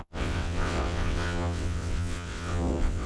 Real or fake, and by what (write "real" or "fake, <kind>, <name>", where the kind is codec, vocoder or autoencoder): fake, vocoder, WaveNeXt